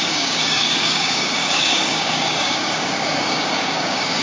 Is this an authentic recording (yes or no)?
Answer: no